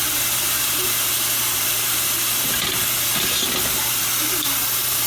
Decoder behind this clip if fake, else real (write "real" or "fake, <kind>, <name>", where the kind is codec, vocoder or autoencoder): real